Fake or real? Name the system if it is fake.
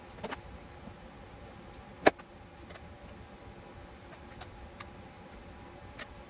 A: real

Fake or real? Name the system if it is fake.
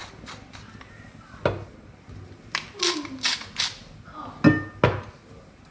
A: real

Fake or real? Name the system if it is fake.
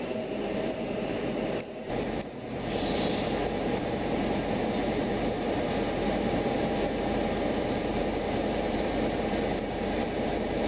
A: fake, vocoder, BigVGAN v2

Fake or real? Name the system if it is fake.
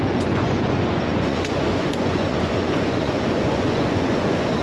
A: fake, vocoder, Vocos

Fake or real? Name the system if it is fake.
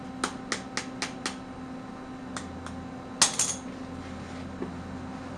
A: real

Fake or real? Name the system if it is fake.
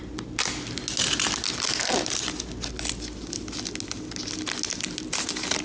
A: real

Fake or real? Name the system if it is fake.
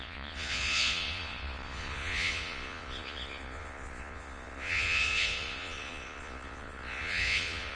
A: fake, vocoder, Vocos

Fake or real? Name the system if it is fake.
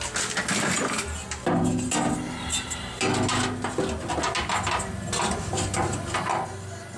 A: real